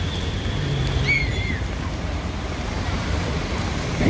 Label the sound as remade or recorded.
recorded